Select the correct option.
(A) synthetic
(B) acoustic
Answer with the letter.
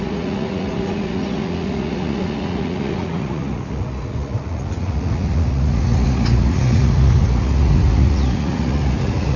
A